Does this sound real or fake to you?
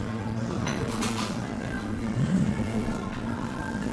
fake